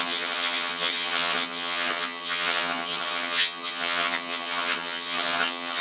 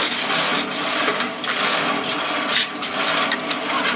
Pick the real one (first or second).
second